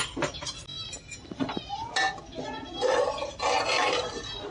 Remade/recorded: recorded